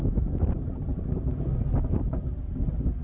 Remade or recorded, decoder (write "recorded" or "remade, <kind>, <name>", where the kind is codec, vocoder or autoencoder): recorded